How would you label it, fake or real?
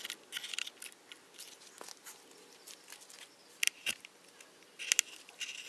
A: real